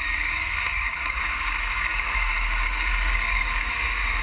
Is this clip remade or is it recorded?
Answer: remade